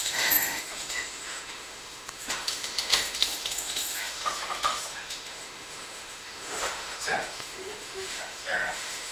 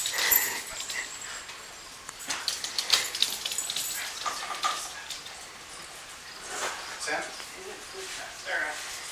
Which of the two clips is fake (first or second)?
first